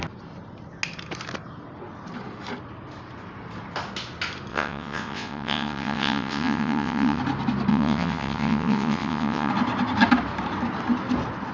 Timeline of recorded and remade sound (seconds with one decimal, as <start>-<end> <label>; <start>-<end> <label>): 0.0-4.5 recorded; 4.5-7.2 remade; 7.2-7.7 recorded; 7.7-9.5 remade; 9.5-11.5 recorded

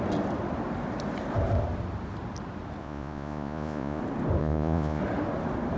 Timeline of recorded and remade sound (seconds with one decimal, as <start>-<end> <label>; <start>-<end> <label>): 0.0-2.8 recorded; 2.8-4.0 remade; 4.0-4.4 recorded; 4.4-5.0 remade; 5.0-5.8 recorded